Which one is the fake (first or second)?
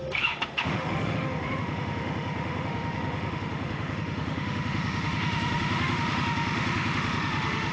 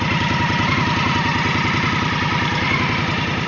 first